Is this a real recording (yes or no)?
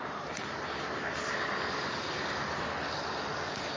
yes